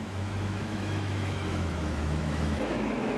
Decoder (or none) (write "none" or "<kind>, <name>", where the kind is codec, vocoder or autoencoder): autoencoder, DAC-VAE